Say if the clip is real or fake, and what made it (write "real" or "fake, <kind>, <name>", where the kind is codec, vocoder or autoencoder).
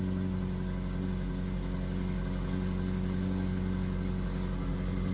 real